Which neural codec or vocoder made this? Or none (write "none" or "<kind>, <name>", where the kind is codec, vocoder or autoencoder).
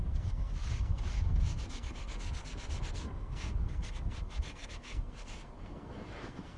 codec, SNAC